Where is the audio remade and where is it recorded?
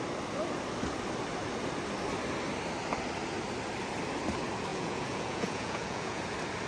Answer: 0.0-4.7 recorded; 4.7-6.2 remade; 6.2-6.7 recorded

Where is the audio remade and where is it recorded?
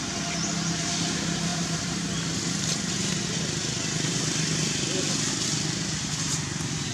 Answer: 0.0-1.5 recorded; 1.5-5.3 remade; 5.3-6.9 recorded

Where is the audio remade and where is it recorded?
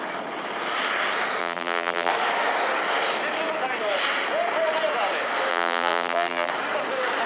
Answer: 0.0-1.4 recorded; 1.4-2.1 remade; 2.1-5.5 recorded; 5.5-6.5 remade; 6.5-7.3 recorded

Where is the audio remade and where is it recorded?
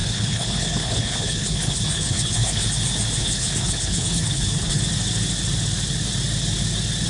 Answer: 0.0-2.7 remade; 2.7-3.2 recorded; 3.2-4.8 remade; 4.8-7.1 recorded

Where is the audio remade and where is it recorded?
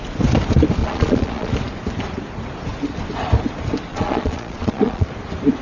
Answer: 0.0-0.8 recorded; 0.8-1.5 remade; 1.5-3.9 recorded; 3.9-5.1 remade; 5.1-5.6 recorded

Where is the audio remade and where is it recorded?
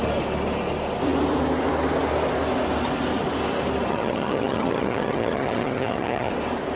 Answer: 0.0-3.9 recorded; 3.9-6.3 remade; 6.3-6.8 recorded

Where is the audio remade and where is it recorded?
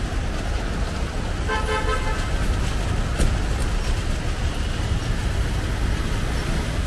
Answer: 0.0-6.9 recorded